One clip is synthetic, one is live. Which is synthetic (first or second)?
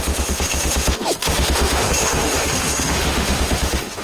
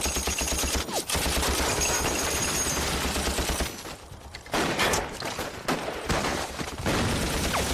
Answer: first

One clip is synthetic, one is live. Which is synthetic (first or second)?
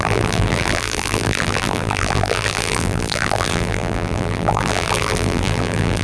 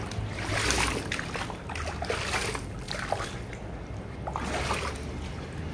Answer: first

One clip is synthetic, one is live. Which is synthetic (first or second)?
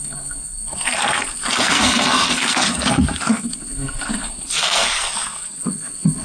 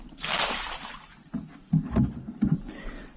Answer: first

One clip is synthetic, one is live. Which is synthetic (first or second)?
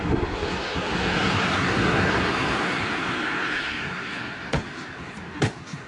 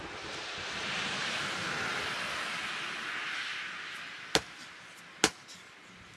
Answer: first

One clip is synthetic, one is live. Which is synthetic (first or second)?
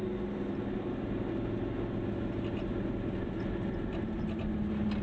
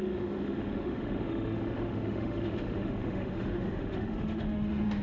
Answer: second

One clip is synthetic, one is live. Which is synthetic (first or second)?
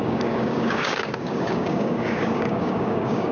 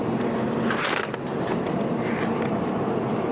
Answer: first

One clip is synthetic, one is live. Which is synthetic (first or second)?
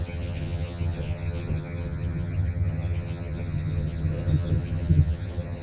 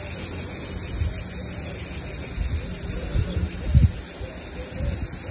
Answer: first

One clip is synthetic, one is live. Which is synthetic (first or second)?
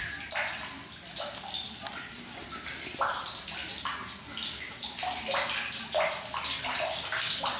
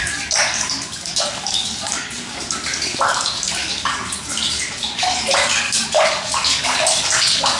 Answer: second